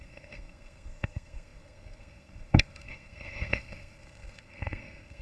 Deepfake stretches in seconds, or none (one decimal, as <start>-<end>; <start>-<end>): 0.0-5.2